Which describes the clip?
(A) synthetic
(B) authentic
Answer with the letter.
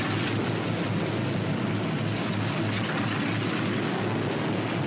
B